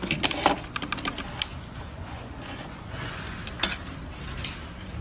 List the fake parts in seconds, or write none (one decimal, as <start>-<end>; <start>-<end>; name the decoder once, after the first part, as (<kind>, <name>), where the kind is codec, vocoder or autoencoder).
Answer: 1.5-3.4 (vocoder, Vocos)